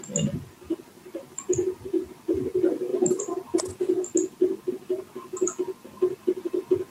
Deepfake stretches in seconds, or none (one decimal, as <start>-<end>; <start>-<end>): none